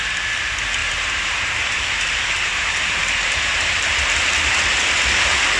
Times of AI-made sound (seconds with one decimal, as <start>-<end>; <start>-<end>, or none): 0.8-4.2